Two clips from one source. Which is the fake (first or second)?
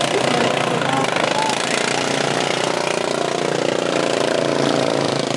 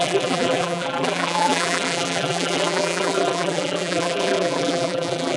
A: second